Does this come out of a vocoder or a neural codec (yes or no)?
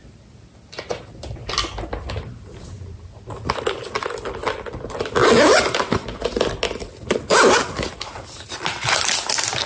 no